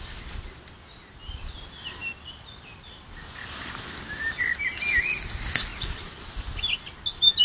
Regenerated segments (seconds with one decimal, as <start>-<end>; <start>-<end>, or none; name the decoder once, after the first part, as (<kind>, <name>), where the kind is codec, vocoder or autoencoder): none